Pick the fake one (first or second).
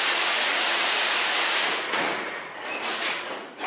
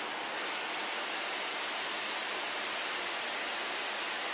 first